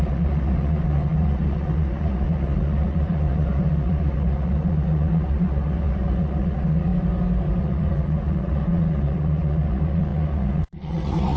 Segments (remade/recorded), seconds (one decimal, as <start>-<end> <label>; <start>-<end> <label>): 0.0-6.9 remade; 6.9-7.6 recorded; 7.6-11.4 remade